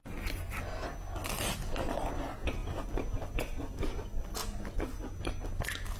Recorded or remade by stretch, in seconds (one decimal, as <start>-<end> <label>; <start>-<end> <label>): 0.0-6.0 recorded